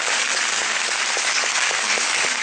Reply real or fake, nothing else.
fake